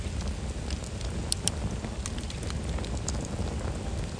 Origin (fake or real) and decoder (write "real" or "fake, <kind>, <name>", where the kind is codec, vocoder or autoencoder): real